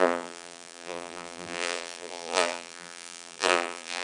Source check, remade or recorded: remade